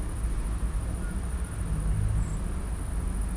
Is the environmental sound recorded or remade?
recorded